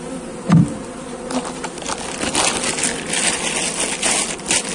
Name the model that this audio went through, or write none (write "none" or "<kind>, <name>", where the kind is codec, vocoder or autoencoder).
none